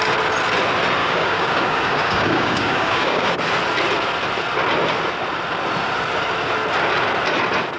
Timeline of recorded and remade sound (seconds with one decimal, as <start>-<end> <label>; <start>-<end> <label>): 0.0-1.0 recorded; 1.0-3.4 remade; 3.4-7.8 recorded